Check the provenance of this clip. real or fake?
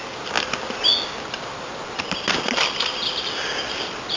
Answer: real